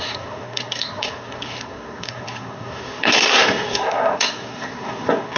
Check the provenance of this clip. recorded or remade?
remade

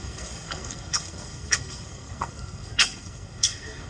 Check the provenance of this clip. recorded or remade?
remade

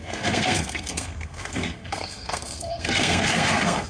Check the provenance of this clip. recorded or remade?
remade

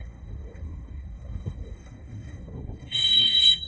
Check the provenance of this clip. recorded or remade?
remade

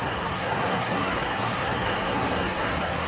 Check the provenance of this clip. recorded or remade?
remade